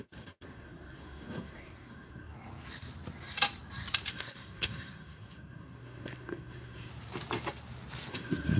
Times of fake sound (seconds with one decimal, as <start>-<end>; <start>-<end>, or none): 0.0-2.3; 4.1-6.9; 8.1-8.6